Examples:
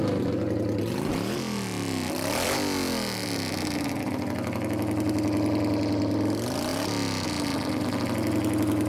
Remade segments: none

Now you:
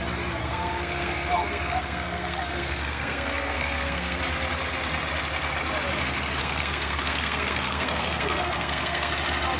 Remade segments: 0.4-4.2 (codec, SNAC); 6.4-9.1